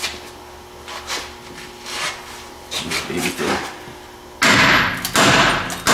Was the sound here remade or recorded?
recorded